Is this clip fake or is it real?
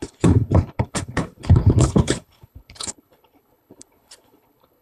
fake